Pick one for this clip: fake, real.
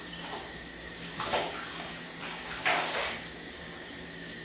fake